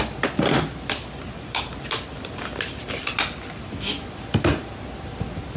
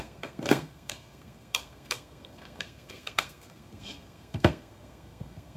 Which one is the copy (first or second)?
second